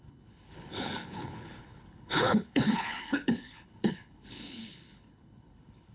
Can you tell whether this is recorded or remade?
remade